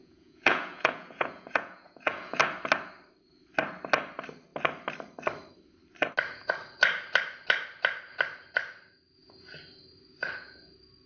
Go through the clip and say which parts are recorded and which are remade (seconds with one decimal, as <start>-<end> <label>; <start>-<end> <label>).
0.0-2.4 remade; 2.4-11.1 recorded